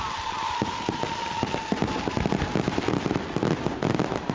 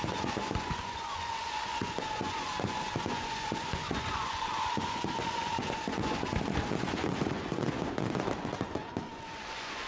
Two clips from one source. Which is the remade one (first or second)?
second